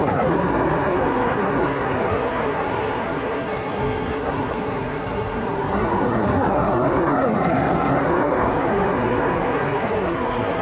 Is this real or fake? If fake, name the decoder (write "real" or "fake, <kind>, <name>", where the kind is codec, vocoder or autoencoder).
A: fake, codec, SNAC